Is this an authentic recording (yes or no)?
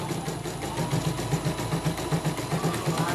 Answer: yes